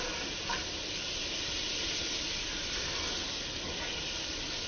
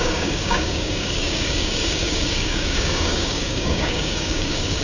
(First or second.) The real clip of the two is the first